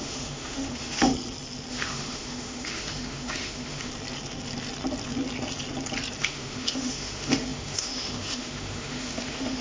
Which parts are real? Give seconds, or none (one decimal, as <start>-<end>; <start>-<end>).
1.1-1.7; 3.9-6.2